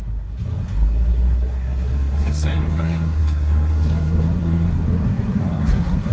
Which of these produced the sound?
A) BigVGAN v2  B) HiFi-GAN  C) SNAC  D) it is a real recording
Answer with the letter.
C